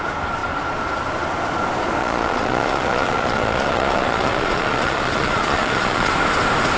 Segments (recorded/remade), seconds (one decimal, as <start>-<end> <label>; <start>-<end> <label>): 0.0-2.0 recorded; 2.0-6.1 remade; 6.1-6.8 recorded